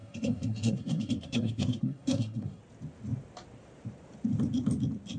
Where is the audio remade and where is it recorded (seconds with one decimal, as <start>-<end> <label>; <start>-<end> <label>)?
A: 0.0-2.6 remade; 2.6-5.2 recorded